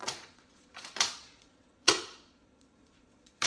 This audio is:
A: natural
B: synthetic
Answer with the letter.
B